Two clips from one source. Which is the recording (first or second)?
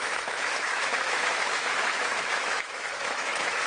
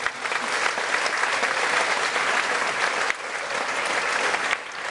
second